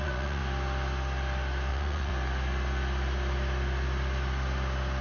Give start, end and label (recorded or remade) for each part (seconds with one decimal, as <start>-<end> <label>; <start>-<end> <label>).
0.0-0.4 remade; 0.4-1.7 recorded; 1.7-2.1 remade; 2.1-5.0 recorded